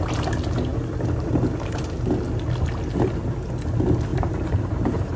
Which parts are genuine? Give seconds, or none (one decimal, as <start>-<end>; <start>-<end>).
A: 0.0-0.7; 2.0-4.1